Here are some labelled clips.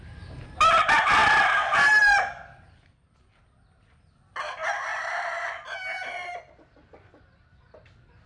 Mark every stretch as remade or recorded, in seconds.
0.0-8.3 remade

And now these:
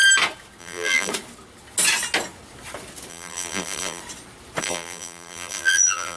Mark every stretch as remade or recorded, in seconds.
0.0-0.6 recorded; 0.6-1.1 remade; 1.1-3.1 recorded; 3.1-4.0 remade; 4.0-4.6 recorded; 4.6-6.2 remade

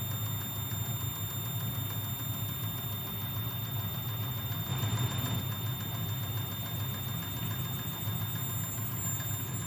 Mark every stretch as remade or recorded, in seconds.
0.0-4.7 recorded; 4.7-5.4 remade; 5.4-9.7 recorded

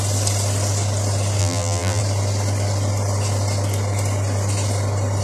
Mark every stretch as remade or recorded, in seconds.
0.0-1.4 recorded; 1.4-2.0 remade; 2.0-5.2 recorded